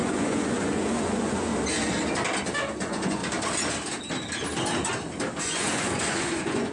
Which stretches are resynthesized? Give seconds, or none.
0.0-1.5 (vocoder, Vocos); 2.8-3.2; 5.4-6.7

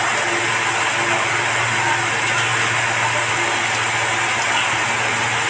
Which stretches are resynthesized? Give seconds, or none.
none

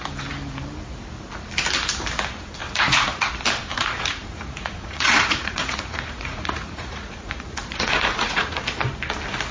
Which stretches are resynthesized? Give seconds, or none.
2.6-3.3 (vocoder, Vocos); 3.7-8.6

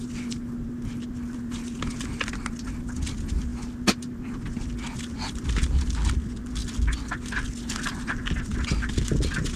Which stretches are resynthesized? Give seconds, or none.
none